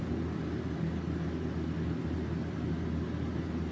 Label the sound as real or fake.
real